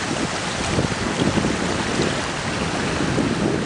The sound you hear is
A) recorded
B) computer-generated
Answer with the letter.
A